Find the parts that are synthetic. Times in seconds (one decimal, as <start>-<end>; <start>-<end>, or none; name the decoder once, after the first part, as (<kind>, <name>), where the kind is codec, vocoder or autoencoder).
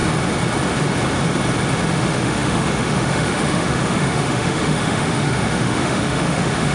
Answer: 1.9-6.7 (autoencoder, DAC-VAE)